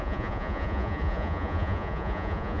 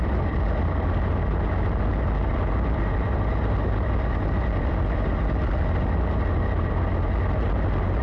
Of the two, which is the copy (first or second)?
first